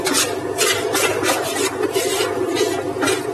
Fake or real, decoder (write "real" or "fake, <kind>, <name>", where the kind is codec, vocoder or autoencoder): real